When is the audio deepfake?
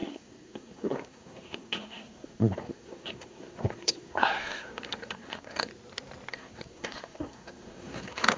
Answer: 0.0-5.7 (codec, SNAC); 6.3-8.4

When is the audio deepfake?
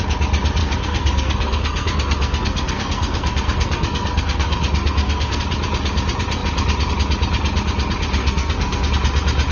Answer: 0.6-5.4 (codec, SNAC); 8.2-8.9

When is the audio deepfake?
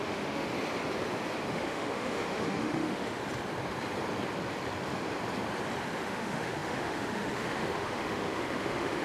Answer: 0.0-0.5 (autoencoder, DAC-VAE); 1.5-3.2; 6.0-9.0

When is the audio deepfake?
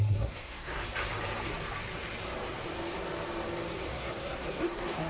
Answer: 0.0-0.8 (codec, SNAC); 3.9-5.1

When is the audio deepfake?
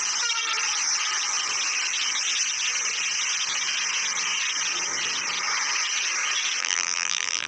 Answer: 6.6-7.5 (vocoder, BigVGAN v2)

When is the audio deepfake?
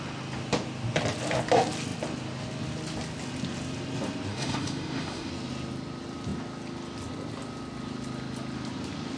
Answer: 4.3-5.3 (autoencoder, DAC-VAE)